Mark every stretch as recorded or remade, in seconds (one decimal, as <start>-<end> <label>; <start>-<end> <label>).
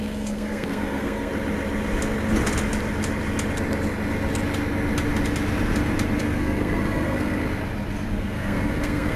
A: 0.0-1.3 remade; 1.3-6.2 recorded; 6.2-7.4 remade; 7.4-8.1 recorded; 8.1-9.2 remade